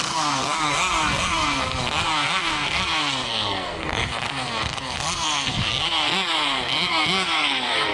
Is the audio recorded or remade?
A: remade